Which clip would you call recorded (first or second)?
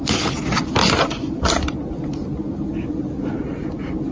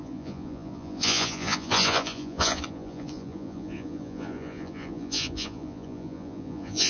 first